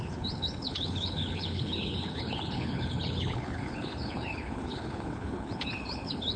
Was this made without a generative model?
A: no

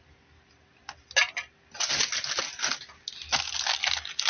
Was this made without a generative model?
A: yes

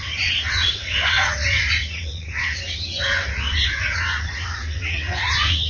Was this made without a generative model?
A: no